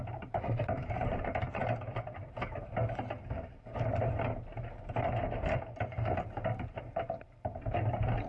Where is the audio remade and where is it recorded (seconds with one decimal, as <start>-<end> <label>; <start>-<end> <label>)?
0.0-1.6 remade; 1.6-3.8 recorded; 3.8-4.5 remade; 4.5-5.9 recorded; 5.9-8.3 remade